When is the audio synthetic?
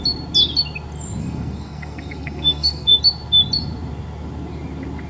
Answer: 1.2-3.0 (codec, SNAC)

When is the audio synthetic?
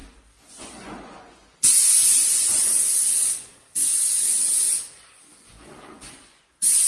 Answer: 0.5-6.9 (vocoder, Vocos)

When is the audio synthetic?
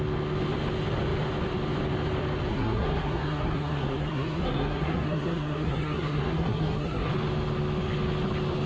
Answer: 2.5-7.1 (codec, SNAC)